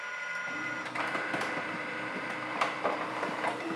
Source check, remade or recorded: remade